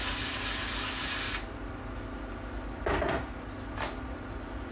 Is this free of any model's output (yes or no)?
yes